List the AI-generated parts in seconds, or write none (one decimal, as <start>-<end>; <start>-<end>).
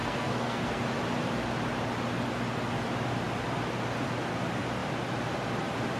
0.0-0.8